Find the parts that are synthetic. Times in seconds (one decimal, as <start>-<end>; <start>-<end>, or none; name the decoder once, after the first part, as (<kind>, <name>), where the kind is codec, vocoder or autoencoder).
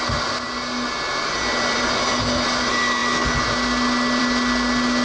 none